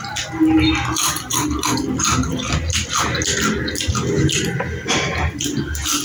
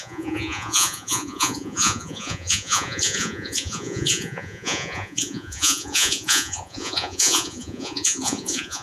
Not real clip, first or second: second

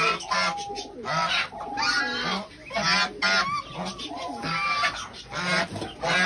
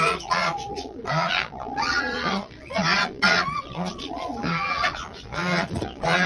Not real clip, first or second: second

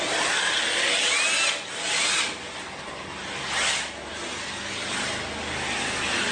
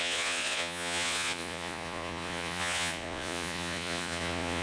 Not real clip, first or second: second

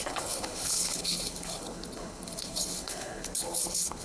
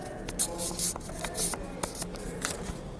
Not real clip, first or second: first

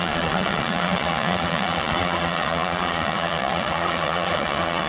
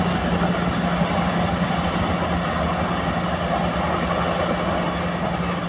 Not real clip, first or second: first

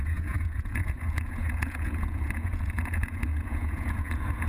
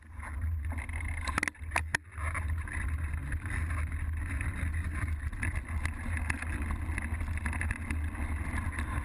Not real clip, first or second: first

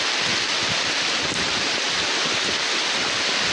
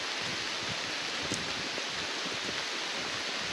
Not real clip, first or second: first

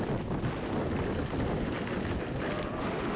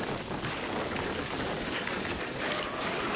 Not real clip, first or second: second